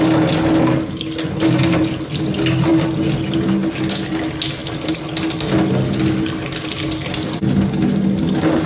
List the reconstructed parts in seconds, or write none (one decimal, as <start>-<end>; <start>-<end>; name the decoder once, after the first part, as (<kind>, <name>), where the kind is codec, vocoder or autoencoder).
none